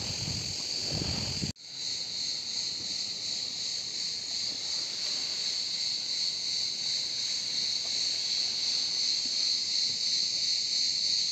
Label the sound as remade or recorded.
recorded